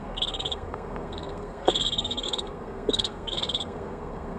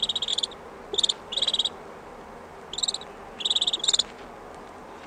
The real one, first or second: second